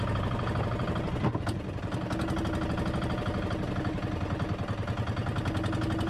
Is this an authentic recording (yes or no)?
yes